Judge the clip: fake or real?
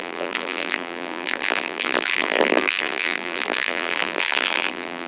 fake